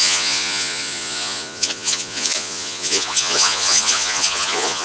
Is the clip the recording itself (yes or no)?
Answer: no